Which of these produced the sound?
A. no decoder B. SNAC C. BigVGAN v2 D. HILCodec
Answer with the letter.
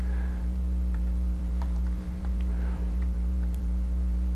C